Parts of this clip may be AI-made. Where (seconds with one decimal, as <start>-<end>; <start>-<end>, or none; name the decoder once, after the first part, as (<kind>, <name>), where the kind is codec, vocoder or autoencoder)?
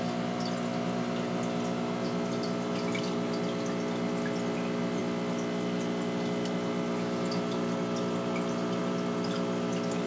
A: none